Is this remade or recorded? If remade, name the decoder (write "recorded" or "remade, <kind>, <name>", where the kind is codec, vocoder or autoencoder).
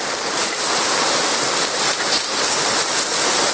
recorded